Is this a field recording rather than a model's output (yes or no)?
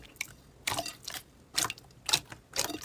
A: yes